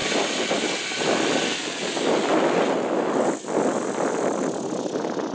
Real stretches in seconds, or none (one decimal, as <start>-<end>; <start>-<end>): 0.0-5.3